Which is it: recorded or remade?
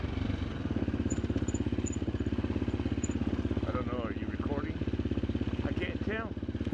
recorded